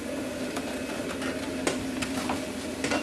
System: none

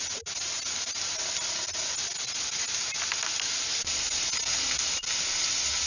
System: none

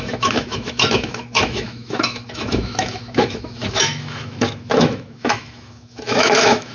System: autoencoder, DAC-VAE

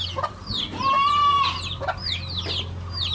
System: none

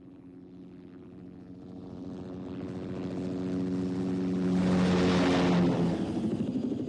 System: none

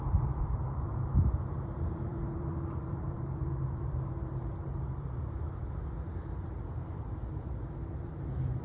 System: vocoder, BigVGAN v2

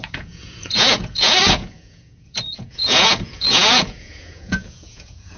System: vocoder, Vocos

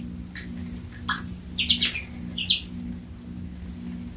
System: none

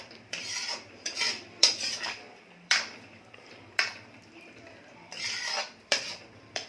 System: vocoder, BigVGAN v2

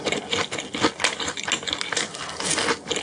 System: none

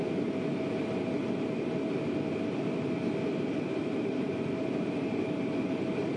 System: none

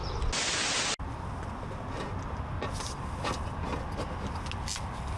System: none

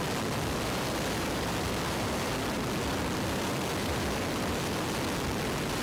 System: vocoder, BigVGAN v2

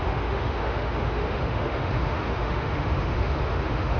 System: autoencoder, DAC-VAE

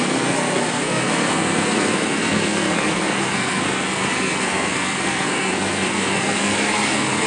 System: codec, SNAC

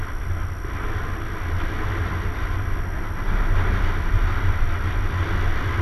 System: none